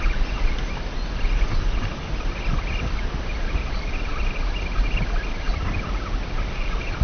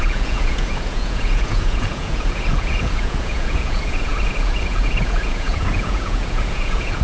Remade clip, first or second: second